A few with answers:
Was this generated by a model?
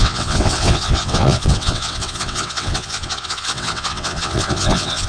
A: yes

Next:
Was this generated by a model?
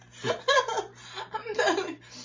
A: no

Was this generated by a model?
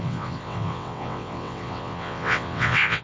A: yes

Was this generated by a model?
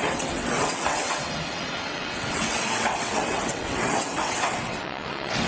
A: yes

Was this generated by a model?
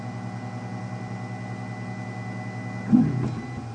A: no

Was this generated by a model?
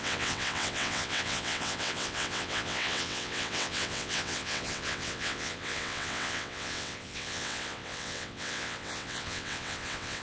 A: yes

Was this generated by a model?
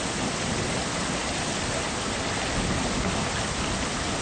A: no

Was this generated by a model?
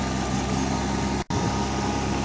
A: no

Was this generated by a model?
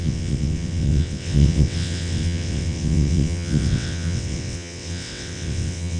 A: yes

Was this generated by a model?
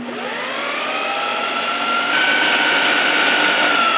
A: no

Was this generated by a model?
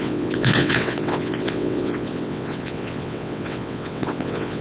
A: yes